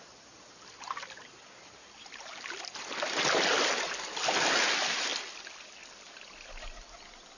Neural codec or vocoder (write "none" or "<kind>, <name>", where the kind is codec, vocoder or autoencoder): none